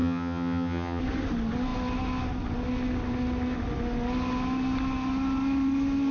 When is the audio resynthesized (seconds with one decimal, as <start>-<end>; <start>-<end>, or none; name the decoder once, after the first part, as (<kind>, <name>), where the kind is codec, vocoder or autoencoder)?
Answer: 0.0-1.0 (vocoder, HiFi-GAN)

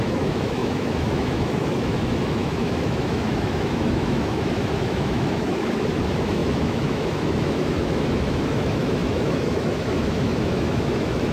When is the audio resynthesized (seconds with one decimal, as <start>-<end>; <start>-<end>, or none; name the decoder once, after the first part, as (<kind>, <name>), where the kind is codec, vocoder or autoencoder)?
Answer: 0.0-11.3 (autoencoder, DAC-VAE)

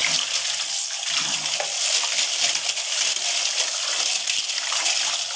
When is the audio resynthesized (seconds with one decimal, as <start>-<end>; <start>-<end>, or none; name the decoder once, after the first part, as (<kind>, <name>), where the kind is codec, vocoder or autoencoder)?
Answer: none

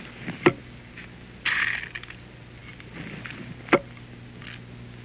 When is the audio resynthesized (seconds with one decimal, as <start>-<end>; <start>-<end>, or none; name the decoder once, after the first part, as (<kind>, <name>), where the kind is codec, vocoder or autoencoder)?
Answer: none

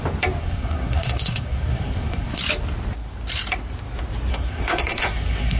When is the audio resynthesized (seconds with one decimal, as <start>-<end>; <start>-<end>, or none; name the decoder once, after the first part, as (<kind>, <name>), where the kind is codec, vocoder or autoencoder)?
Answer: 0.4-2.4 (codec, SNAC); 4.3-5.6

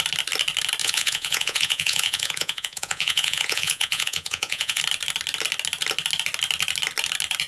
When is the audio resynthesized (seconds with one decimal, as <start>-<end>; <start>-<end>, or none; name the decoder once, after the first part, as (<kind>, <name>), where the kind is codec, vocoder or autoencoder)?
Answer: 0.8-4.8 (vocoder, Vocos)

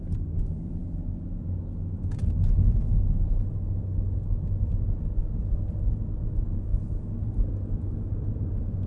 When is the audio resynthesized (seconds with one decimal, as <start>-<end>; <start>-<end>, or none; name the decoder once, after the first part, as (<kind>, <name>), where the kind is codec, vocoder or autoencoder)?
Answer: 0.0-0.8 (vocoder, BigVGAN v2); 5.2-8.9